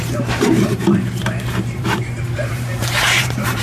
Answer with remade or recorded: remade